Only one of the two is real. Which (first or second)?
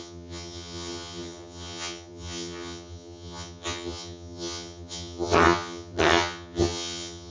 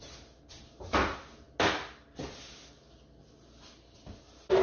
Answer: second